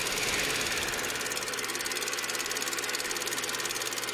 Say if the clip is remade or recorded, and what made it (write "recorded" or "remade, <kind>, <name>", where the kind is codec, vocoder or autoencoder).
recorded